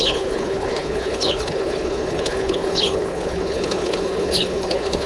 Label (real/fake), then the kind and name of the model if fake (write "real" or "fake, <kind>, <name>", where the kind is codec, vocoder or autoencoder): fake, codec, HILCodec